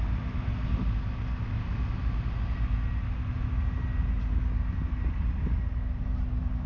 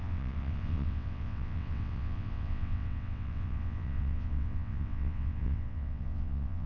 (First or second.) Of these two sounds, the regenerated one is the second